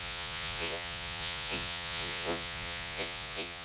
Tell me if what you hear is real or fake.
fake